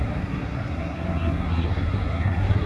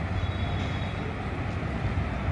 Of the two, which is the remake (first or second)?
first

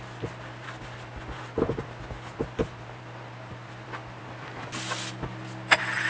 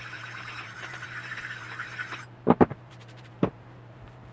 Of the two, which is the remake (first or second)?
second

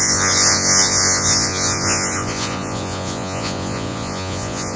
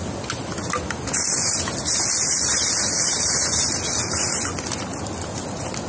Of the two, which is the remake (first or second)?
first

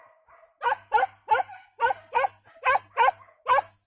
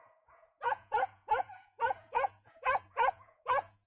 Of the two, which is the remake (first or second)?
second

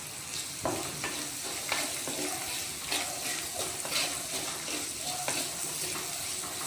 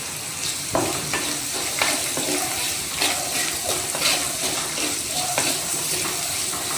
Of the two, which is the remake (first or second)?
second